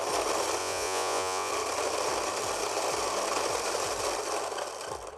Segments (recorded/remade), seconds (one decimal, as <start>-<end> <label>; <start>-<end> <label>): 0.0-0.6 recorded; 0.6-1.5 remade; 1.5-5.2 recorded